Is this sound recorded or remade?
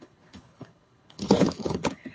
remade